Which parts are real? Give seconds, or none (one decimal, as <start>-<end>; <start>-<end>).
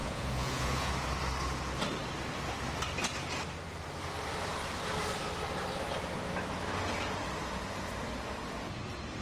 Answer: 0.9-9.2